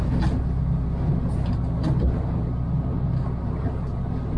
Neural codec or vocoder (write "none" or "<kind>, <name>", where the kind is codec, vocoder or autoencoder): none